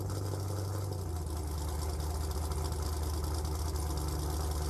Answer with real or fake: real